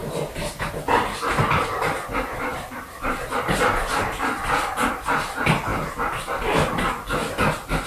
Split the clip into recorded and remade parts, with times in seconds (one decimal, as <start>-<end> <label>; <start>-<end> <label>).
0.0-0.6 remade; 0.6-2.5 recorded; 2.5-5.1 remade; 5.1-5.7 recorded; 5.7-6.9 remade; 6.9-7.9 recorded